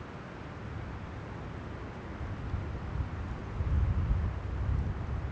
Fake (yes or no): no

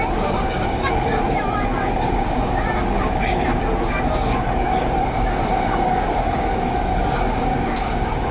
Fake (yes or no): yes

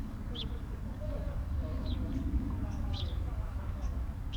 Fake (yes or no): yes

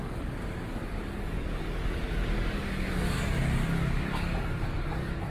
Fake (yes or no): yes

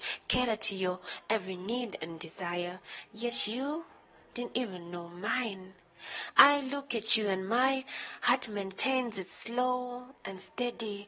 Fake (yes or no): yes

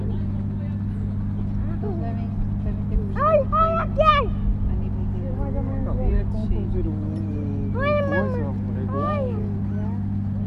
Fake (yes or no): no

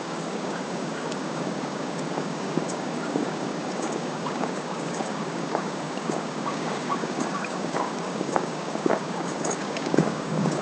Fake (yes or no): yes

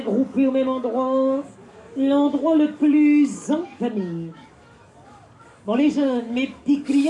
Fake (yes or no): yes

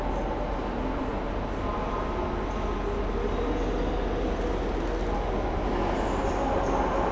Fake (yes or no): no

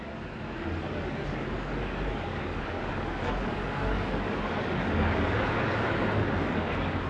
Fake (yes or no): yes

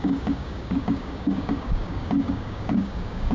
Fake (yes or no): yes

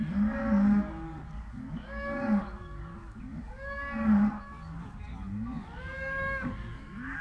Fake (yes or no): yes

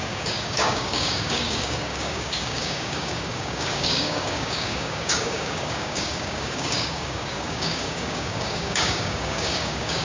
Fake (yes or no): yes